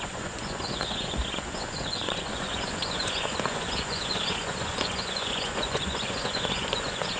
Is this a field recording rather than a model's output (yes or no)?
no